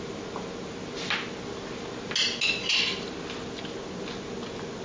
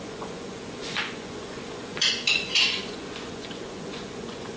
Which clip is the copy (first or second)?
second